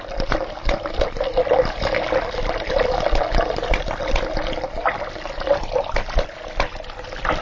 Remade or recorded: recorded